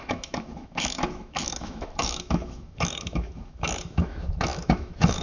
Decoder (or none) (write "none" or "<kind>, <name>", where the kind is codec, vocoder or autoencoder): autoencoder, DAC-VAE